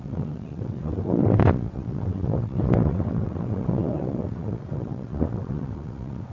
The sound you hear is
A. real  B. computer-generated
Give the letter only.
B